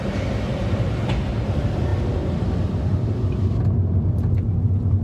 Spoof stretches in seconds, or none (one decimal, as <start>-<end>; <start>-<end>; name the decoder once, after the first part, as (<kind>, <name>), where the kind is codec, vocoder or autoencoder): 0.5-1.0 (vocoder, BigVGAN v2)